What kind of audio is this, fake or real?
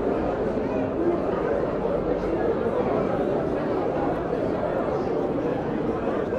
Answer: real